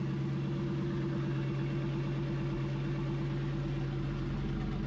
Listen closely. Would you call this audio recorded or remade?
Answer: recorded